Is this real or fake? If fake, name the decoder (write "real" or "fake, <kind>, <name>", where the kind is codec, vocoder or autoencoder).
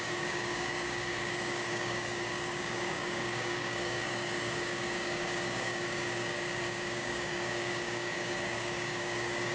fake, codec, DAC